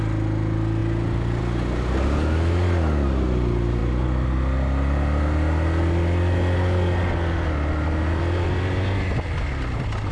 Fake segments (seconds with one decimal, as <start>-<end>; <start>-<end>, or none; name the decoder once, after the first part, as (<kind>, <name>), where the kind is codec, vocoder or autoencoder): none